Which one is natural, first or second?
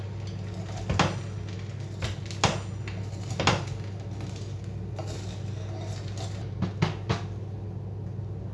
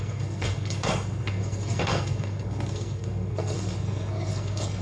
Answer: first